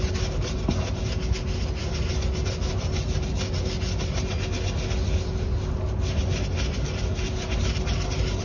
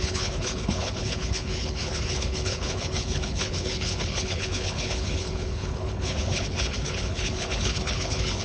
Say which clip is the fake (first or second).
second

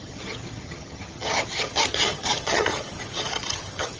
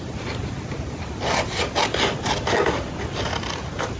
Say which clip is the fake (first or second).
first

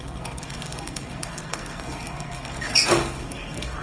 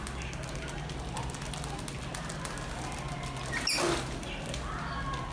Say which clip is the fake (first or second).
first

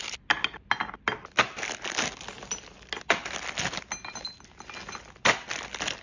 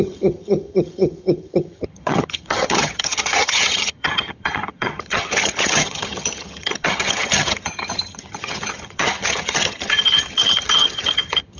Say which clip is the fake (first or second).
second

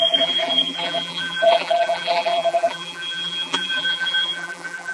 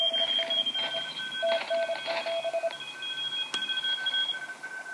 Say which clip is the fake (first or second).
first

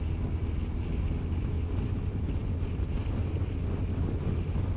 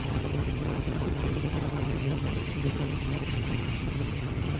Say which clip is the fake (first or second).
second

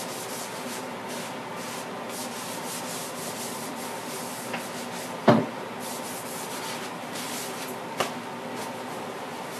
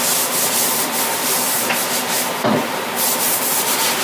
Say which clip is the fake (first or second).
second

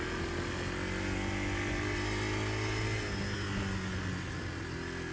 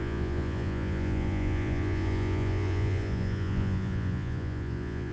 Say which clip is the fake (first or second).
second